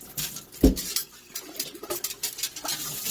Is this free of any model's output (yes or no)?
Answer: yes